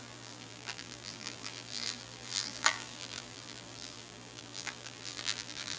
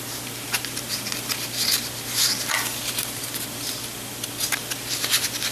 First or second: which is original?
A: second